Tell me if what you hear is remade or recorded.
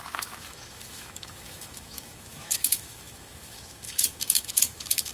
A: remade